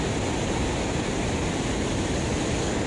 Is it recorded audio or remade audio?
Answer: recorded